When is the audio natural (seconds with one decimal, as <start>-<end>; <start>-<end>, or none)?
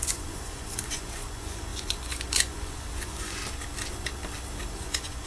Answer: 3.4-4.7